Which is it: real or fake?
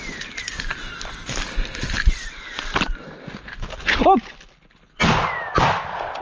real